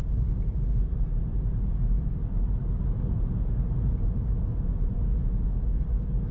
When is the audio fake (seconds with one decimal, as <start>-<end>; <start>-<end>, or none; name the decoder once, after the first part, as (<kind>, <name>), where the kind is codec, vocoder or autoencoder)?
none